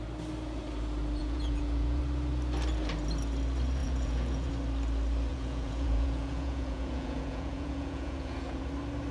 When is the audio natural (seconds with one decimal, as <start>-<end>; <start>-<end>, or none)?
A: 0.0-1.2; 2.0-3.8; 4.5-5.3; 8.6-9.1